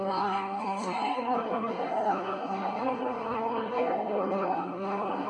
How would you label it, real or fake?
fake